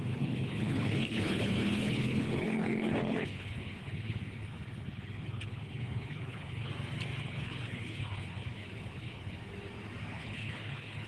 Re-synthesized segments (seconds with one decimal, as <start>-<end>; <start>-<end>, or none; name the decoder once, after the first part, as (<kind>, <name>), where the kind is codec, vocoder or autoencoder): 0.0-6.7 (codec, HILCodec); 7.2-9.5; 10.1-11.1